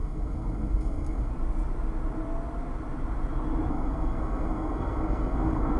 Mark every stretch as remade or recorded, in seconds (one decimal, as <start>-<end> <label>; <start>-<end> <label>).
0.0-1.3 remade; 1.3-3.7 recorded; 3.7-5.8 remade